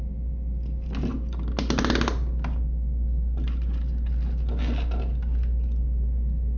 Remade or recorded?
recorded